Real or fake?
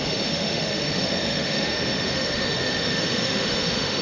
fake